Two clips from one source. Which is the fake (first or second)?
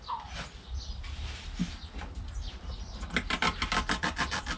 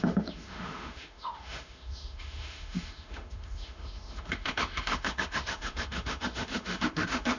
second